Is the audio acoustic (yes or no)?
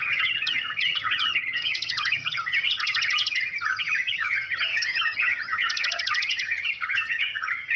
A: no